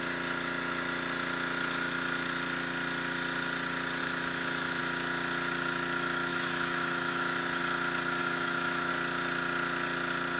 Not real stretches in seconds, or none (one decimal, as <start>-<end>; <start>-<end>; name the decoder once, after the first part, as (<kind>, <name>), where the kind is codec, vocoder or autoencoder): 4.0-4.8 (autoencoder, DAC-VAE); 6.3-7.6; 8.2-8.9